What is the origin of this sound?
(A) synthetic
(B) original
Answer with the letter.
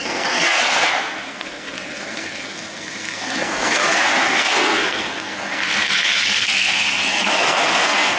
A